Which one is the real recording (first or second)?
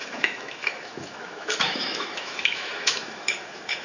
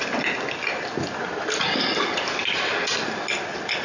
second